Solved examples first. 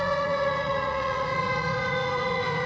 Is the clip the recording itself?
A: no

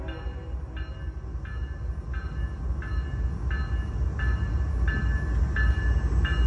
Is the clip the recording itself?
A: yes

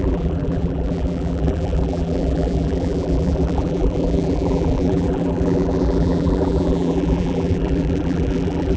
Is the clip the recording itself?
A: no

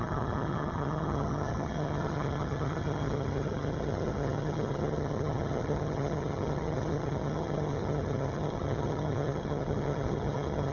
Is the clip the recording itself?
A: no